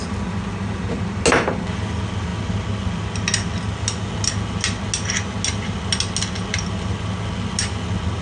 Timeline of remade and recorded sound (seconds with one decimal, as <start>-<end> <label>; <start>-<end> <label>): 0.0-8.2 recorded